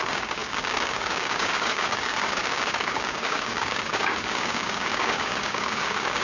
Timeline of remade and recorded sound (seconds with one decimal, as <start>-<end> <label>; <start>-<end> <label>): 0.0-6.2 remade